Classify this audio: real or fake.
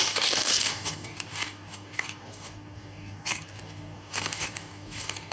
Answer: fake